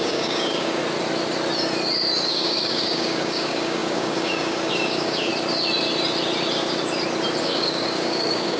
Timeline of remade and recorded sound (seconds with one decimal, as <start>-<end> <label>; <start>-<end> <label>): 0.0-0.8 remade; 0.8-2.3 recorded; 2.3-5.3 remade; 5.3-7.4 recorded; 7.4-8.6 remade